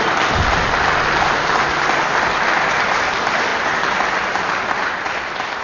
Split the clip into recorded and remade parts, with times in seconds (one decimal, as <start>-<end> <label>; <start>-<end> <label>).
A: 0.0-5.6 recorded